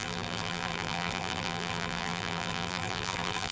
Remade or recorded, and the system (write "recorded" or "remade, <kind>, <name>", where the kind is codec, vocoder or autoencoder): remade, vocoder, BigVGAN v2